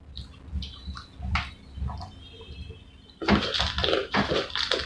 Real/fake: real